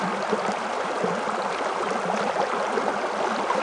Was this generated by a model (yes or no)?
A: no